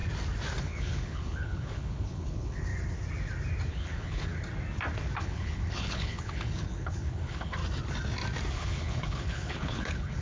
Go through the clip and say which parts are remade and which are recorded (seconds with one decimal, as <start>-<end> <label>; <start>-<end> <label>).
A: 0.0-0.6 recorded; 0.6-2.7 remade; 2.7-3.7 recorded; 3.7-4.3 remade; 4.3-5.2 recorded; 5.2-7.6 remade; 7.6-8.5 recorded; 8.5-10.2 remade